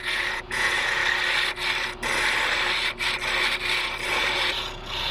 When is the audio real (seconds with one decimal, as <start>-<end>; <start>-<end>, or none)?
1.0-4.1